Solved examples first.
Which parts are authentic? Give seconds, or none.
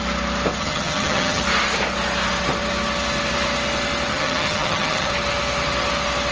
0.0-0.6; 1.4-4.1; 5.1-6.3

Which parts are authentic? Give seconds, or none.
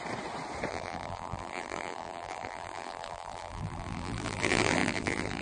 0.0-0.7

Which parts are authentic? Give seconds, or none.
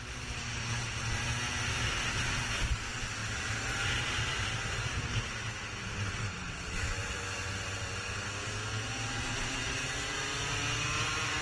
0.0-5.8; 6.6-11.4